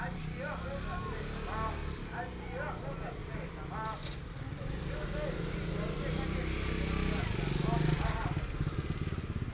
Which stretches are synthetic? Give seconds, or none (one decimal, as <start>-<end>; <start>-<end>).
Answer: none